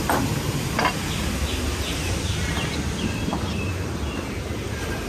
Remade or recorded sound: recorded